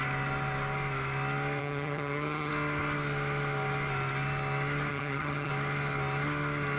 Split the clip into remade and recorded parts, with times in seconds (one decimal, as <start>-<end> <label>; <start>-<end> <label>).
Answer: 0.0-1.6 recorded; 1.6-2.5 remade; 2.5-4.9 recorded; 4.9-5.5 remade; 5.5-6.8 recorded